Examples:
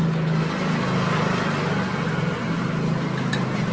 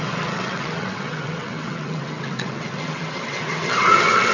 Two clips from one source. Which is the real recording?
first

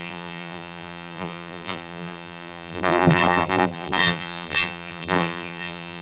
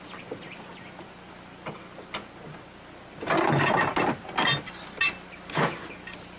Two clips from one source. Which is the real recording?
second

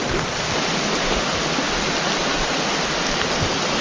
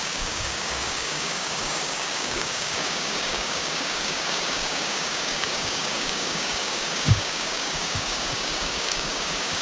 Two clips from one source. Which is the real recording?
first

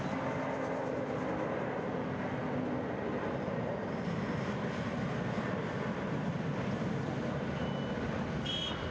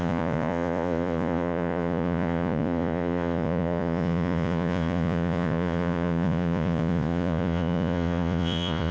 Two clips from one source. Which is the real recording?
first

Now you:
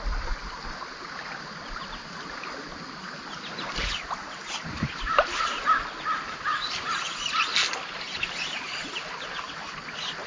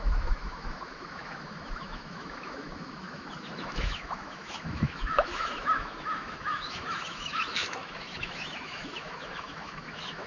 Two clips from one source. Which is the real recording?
first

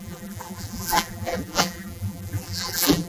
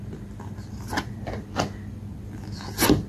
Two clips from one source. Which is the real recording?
second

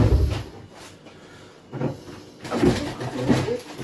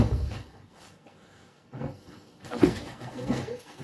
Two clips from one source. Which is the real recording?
first